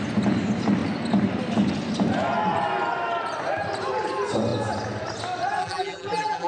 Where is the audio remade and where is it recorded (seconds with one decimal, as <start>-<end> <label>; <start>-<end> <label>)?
0.0-5.6 recorded; 5.6-6.5 remade